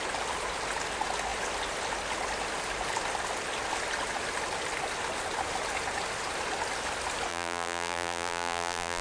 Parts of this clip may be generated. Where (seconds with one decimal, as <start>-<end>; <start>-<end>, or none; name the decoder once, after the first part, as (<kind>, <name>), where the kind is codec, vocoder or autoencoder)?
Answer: 7.3-9.0 (vocoder, BigVGAN v2)